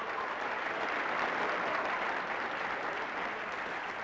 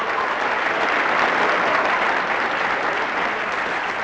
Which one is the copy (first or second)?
first